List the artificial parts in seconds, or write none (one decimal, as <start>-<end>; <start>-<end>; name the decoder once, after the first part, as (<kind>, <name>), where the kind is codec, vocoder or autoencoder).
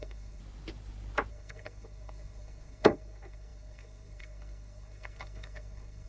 0.0-0.4 (codec, SNAC); 1.3-6.1